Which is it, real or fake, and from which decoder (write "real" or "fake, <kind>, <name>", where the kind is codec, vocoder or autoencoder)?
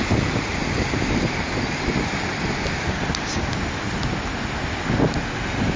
real